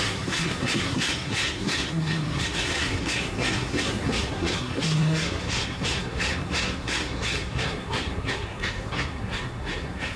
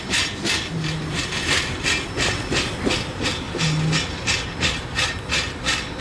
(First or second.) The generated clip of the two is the first